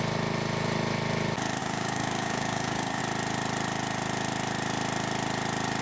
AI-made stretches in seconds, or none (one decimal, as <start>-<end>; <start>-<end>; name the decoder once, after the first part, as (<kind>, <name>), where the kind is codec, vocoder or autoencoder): 1.6-3.0 (codec, DAC)